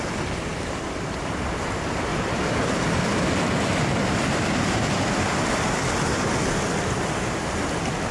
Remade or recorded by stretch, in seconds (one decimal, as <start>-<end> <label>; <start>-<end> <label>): 0.0-0.5 recorded; 0.5-1.6 remade; 1.6-2.1 recorded; 2.1-5.7 remade; 5.7-8.1 recorded